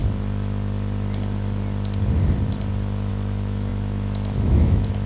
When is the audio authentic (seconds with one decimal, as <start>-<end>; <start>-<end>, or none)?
0.0-3.1